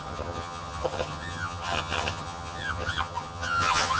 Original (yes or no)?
no